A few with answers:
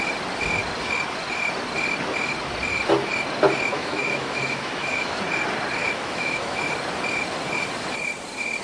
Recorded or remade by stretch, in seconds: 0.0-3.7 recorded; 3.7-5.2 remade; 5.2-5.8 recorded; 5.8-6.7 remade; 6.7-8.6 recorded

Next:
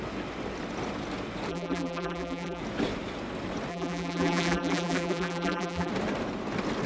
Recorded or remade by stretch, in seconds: 0.0-1.5 recorded; 1.5-2.6 remade; 2.6-3.7 recorded; 3.7-5.9 remade; 5.9-6.9 recorded